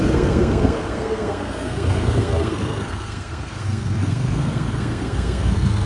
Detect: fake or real fake